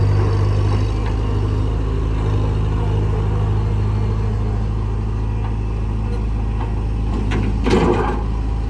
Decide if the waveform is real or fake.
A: real